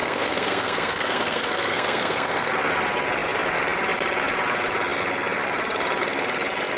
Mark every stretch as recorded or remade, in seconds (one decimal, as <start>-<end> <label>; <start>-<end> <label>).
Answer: 0.0-2.5 remade; 2.5-6.8 recorded